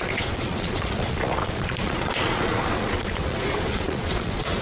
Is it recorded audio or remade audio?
remade